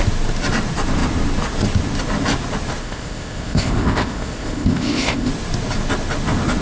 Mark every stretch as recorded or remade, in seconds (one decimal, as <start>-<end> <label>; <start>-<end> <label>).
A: 0.0-2.8 recorded; 2.8-5.3 remade; 5.3-6.6 recorded